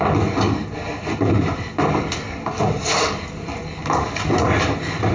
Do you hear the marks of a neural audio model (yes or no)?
no